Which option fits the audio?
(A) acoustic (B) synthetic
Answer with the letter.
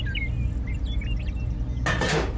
A